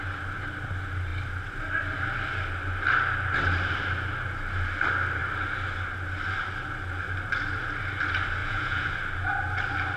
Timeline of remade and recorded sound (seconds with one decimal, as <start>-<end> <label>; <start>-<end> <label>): 0.0-8.4 recorded; 8.4-8.9 remade; 8.9-10.0 recorded